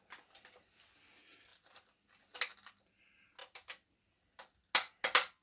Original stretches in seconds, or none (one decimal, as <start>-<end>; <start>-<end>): 0.0-5.4